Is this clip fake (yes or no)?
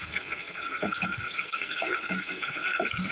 yes